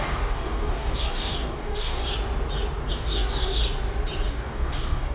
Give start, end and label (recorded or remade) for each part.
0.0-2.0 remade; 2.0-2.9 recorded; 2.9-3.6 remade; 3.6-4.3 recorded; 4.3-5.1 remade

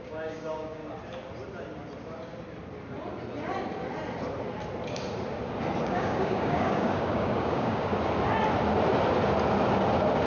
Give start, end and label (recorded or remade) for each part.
0.0-0.8 remade; 0.8-5.8 recorded; 5.8-7.9 remade; 7.9-10.3 recorded